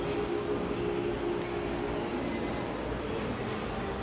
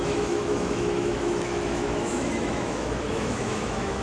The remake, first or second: second